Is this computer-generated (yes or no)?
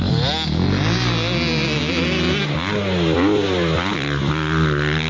no